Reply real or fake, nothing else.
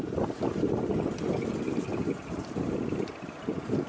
real